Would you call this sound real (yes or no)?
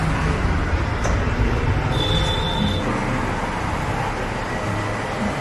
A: yes